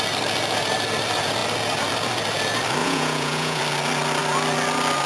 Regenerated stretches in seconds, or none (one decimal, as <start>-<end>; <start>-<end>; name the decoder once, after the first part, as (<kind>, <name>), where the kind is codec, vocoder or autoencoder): 2.8-3.6 (vocoder, Vocos)